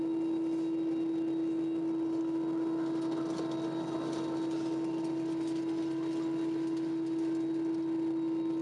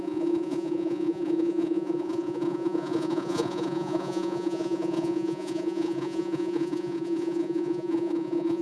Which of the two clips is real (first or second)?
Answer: first